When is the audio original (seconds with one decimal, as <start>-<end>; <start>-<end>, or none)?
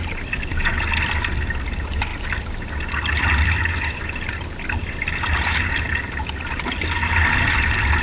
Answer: 0.0-2.1; 2.7-8.0